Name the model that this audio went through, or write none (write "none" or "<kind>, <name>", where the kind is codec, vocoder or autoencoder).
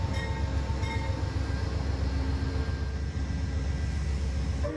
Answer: none